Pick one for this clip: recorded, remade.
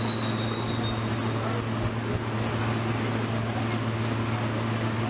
recorded